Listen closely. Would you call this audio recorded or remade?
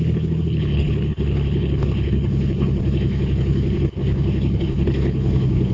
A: remade